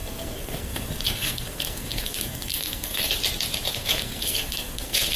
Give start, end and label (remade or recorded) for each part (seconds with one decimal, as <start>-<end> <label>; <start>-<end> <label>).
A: 0.0-3.1 remade; 3.1-3.7 recorded; 3.7-5.2 remade

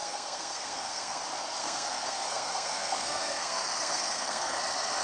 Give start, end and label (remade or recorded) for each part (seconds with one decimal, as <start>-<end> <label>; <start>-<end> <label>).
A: 0.0-1.2 remade; 1.2-1.6 recorded; 1.6-4.6 remade; 4.6-5.0 recorded

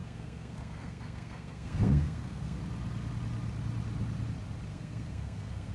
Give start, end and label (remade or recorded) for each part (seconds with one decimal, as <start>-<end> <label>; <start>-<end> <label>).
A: 0.0-2.6 remade; 2.6-4.7 recorded; 4.7-5.7 remade

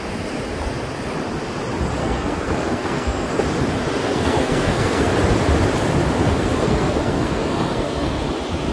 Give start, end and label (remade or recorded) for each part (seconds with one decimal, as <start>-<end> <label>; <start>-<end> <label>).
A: 0.0-2.0 recorded; 2.0-3.3 remade; 3.3-4.0 recorded; 4.0-5.1 remade; 5.1-6.2 recorded; 6.2-8.2 remade; 8.2-8.7 recorded

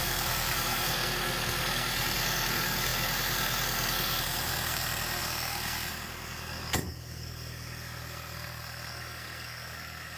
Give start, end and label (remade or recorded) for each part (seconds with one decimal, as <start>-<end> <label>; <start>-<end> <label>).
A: 0.0-10.2 remade

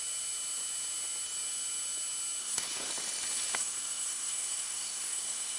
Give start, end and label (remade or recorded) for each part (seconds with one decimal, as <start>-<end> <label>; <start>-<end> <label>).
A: 0.0-2.4 recorded; 2.4-2.9 remade; 2.9-3.6 recorded; 3.6-5.6 remade

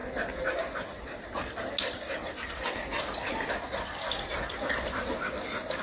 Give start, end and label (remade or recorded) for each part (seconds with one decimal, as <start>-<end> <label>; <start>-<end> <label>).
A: 0.0-5.8 recorded

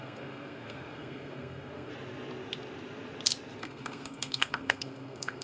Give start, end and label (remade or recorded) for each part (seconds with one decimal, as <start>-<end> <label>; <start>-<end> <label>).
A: 0.0-1.9 remade; 1.9-3.6 recorded; 3.6-5.4 remade